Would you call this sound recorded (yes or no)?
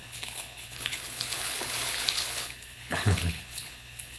no